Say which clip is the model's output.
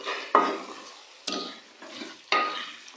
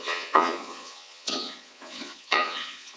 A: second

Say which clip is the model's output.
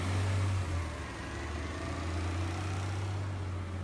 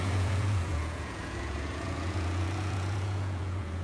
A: second